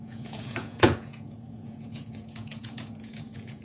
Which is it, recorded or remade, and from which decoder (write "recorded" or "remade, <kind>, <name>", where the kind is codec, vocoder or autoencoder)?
remade, vocoder, Vocos